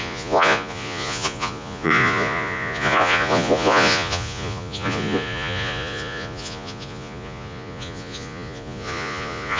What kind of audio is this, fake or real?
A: fake